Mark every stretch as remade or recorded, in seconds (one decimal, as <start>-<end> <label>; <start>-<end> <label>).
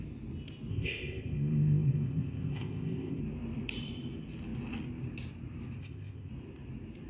0.0-0.7 recorded; 0.7-3.2 remade; 3.2-5.8 recorded; 5.8-6.3 remade; 6.3-7.1 recorded